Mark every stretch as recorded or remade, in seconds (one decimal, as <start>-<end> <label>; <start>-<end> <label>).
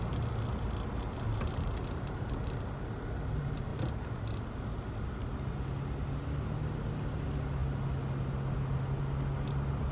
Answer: 0.0-9.9 recorded